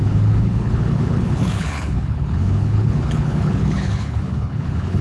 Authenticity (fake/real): fake